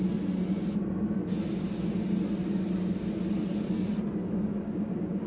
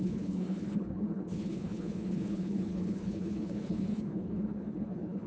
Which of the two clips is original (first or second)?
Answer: first